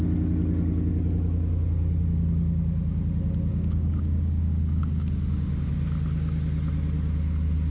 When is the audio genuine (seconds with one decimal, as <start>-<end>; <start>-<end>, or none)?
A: 0.0-3.5; 5.7-7.7